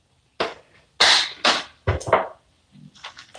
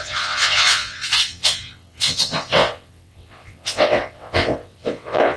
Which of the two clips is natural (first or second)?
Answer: first